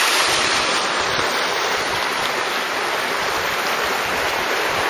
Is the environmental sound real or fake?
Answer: fake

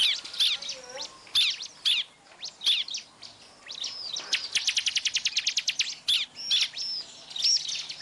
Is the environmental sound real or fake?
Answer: real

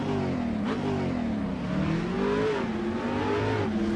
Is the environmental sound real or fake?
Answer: real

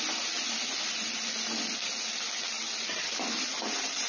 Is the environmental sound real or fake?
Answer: real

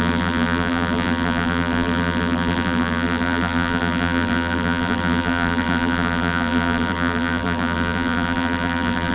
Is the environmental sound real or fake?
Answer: fake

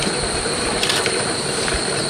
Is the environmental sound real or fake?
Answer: real